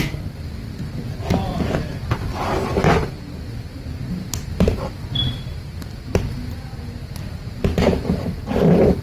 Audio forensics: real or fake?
real